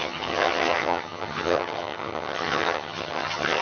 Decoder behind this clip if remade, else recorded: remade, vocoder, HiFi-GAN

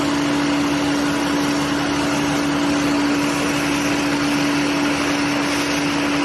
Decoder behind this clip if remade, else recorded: recorded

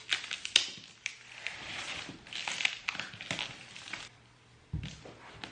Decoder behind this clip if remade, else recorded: recorded